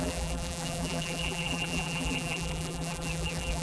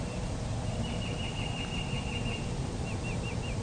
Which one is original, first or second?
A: second